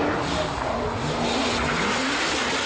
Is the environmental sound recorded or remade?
recorded